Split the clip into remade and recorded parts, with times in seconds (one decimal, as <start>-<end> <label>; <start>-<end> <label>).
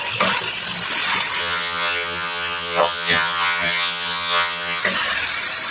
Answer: 0.0-1.4 recorded; 1.4-4.8 remade; 4.8-5.7 recorded